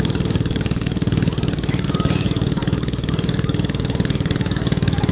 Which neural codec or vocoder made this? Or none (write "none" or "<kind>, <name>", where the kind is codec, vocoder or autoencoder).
codec, DAC